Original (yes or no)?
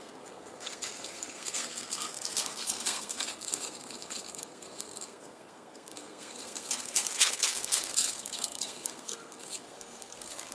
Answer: no